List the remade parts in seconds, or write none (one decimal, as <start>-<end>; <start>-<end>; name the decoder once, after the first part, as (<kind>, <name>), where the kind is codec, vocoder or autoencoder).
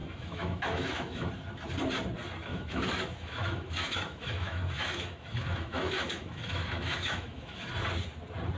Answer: 0.0-1.3 (autoencoder, DAC-VAE); 2.5-7.7